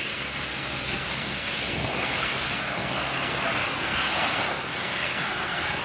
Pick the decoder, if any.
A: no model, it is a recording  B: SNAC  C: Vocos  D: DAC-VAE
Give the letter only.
B